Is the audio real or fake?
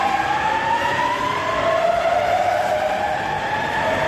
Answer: real